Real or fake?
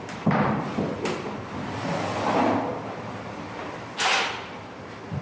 fake